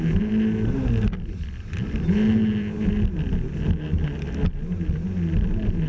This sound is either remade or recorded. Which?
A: recorded